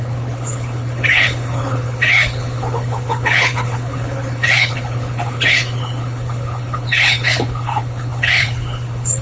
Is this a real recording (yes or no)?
no